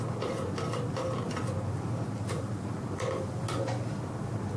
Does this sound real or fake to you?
real